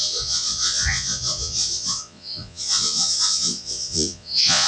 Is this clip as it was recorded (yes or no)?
no